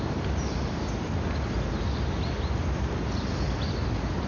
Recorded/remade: recorded